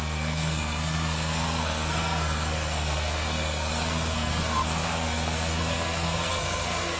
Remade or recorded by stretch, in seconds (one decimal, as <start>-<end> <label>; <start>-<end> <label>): 0.0-7.0 remade

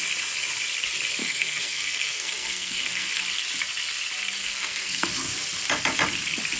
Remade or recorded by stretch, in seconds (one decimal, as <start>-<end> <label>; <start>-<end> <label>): 0.0-1.2 recorded; 1.2-3.2 remade; 3.2-4.4 recorded; 4.4-5.1 remade; 5.1-6.6 recorded

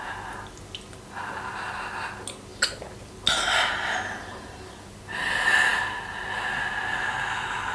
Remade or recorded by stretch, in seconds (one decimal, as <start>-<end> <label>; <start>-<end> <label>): 0.0-7.7 recorded

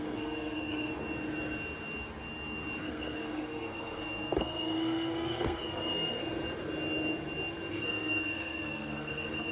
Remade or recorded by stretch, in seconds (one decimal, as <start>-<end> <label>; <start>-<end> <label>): 0.0-0.9 remade; 0.9-2.8 recorded; 2.8-6.2 remade; 6.2-7.7 recorded; 7.7-9.5 remade